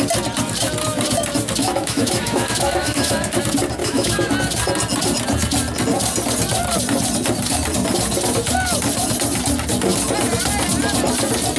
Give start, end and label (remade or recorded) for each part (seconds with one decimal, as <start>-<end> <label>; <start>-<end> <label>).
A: 0.0-1.6 recorded; 1.6-3.4 remade; 3.4-3.8 recorded; 3.8-4.3 remade; 4.3-11.6 recorded

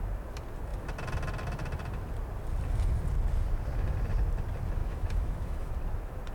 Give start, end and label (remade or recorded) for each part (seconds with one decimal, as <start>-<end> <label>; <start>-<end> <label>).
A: 0.0-4.8 recorded; 4.8-5.7 remade; 5.7-6.3 recorded

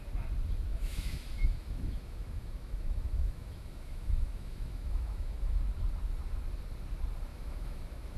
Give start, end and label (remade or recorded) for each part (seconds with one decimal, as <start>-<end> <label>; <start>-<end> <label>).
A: 0.0-0.7 recorded; 0.7-5.6 remade; 5.6-7.3 recorded; 7.3-8.2 remade

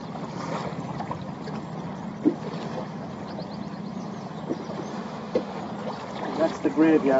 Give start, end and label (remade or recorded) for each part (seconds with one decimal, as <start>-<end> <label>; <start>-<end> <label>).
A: 0.0-4.9 recorded; 4.9-5.6 remade; 5.6-7.2 recorded

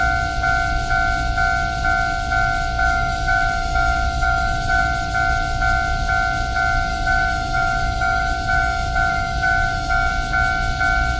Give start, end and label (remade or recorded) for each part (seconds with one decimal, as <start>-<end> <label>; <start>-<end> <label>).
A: 0.0-2.8 recorded; 2.8-4.8 remade; 4.8-6.9 recorded; 6.9-10.1 remade; 10.1-11.2 recorded